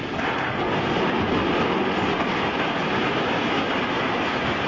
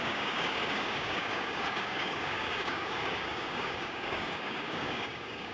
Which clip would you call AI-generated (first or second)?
second